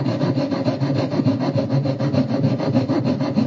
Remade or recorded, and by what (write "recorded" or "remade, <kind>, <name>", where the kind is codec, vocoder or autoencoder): recorded